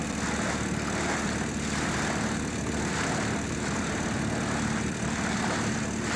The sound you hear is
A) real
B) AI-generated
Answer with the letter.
A